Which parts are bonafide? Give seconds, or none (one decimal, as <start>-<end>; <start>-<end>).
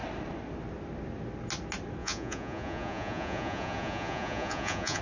0.0-2.0